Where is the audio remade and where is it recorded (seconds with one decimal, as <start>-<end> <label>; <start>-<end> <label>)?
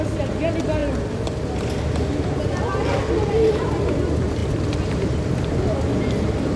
0.0-6.6 recorded